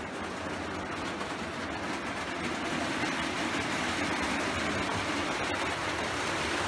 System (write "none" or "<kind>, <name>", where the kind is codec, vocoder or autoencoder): none